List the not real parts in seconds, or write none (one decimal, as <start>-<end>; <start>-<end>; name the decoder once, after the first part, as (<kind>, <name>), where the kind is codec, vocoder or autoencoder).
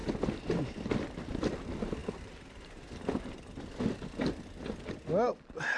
0.0-1.2 (vocoder, BigVGAN v2)